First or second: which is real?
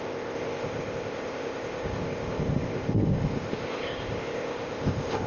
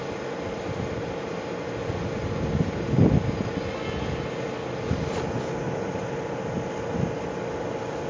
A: second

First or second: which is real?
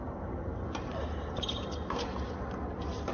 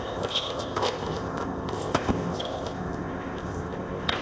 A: first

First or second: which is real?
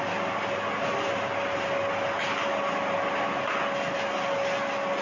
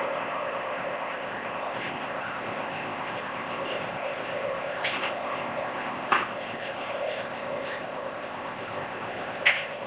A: first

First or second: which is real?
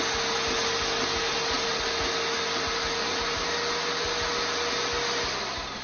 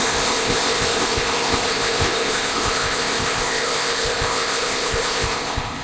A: first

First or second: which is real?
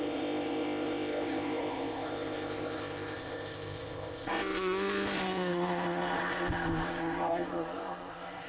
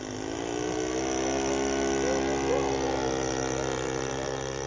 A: second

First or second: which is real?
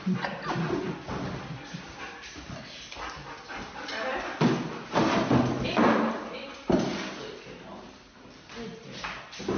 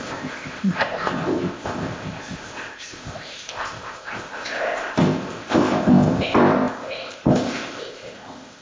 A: first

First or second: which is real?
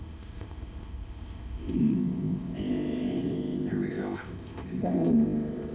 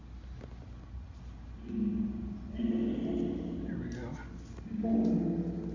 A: second